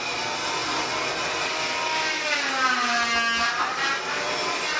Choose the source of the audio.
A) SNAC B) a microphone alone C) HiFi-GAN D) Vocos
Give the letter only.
B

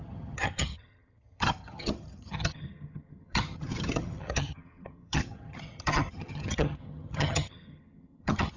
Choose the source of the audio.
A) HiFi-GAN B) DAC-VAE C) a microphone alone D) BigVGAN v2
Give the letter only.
A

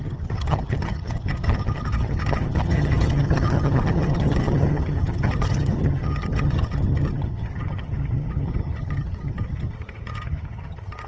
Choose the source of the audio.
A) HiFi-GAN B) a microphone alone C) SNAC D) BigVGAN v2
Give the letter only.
A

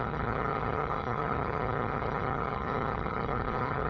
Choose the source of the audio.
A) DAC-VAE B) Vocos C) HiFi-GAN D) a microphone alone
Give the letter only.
C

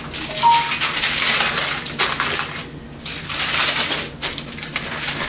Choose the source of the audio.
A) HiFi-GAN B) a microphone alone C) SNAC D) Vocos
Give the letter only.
B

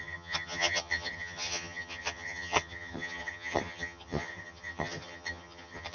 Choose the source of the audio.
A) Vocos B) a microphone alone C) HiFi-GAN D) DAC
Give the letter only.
C